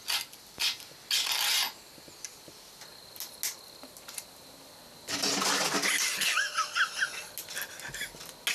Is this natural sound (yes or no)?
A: yes